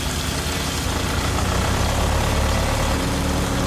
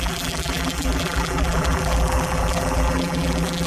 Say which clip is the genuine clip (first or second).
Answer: first